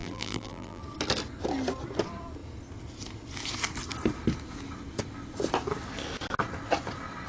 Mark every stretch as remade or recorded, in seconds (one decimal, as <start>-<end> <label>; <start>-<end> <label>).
0.0-0.8 remade; 0.8-7.3 recorded